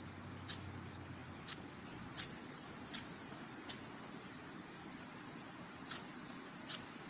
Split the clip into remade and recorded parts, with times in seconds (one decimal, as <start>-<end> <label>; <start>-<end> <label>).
0.0-7.1 recorded